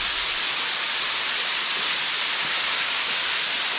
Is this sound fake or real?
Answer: real